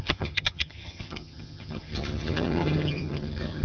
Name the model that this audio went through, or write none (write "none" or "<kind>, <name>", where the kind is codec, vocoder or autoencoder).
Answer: vocoder, HiFi-GAN